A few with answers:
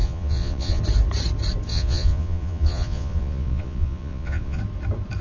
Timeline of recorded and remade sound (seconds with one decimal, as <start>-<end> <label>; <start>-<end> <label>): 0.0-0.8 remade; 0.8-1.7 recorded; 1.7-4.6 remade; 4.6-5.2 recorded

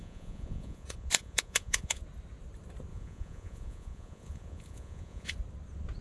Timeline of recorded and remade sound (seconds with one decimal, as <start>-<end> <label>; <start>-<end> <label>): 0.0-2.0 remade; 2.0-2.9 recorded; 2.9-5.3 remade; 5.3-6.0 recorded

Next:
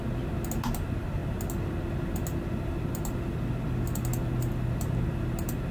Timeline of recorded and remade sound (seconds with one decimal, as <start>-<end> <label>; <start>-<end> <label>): 0.0-5.7 recorded

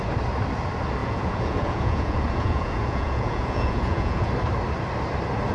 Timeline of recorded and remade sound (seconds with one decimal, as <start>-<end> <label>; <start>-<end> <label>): 0.0-1.0 recorded; 1.0-4.3 remade; 4.3-5.5 recorded

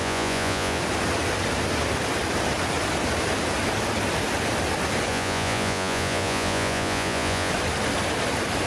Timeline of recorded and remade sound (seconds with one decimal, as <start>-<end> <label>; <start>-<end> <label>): 0.0-0.8 remade; 0.8-5.1 recorded; 5.1-7.5 remade; 7.5-8.7 recorded

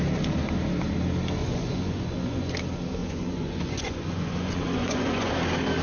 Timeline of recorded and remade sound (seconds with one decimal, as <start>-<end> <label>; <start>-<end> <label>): 0.0-1.4 recorded; 1.4-2.5 remade; 2.5-3.0 recorded; 3.0-5.3 remade; 5.3-5.8 recorded

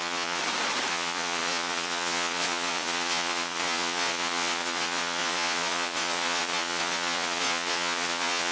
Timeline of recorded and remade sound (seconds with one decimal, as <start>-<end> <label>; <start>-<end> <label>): 0.0-0.4 remade; 0.4-0.9 recorded; 0.9-8.5 remade

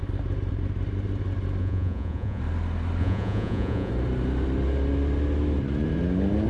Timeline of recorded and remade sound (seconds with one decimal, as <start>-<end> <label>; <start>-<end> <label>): 0.0-1.6 recorded; 1.6-2.4 remade; 2.4-3.0 recorded; 3.0-3.9 remade; 3.9-6.5 recorded